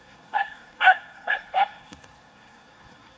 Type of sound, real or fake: fake